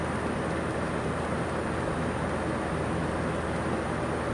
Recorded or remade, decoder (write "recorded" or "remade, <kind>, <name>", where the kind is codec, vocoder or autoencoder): recorded